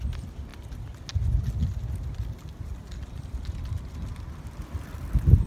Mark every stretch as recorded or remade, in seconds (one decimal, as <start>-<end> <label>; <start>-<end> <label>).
0.0-5.5 recorded